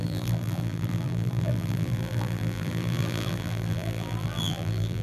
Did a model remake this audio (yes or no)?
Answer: yes